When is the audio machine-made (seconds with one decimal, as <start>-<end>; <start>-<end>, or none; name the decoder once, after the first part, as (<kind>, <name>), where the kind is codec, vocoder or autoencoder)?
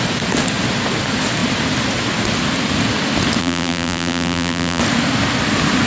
3.4-4.8 (vocoder, BigVGAN v2)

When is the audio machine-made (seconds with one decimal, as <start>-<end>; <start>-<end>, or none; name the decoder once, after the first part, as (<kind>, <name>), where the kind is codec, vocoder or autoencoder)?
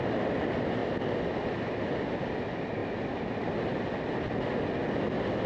none